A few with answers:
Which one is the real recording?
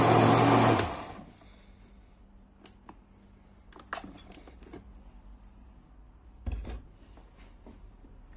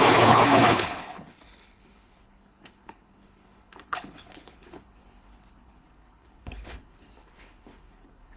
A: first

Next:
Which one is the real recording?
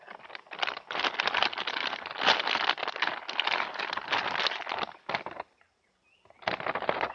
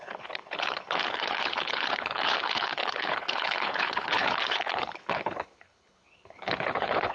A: first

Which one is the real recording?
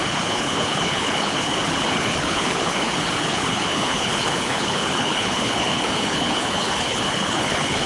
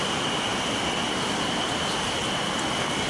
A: second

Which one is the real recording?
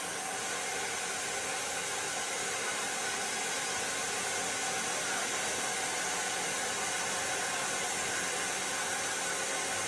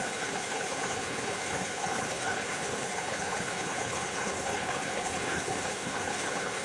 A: first